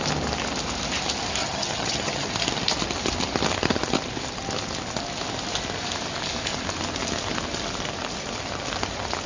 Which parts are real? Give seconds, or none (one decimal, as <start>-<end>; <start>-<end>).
0.0-1.4; 2.3-9.3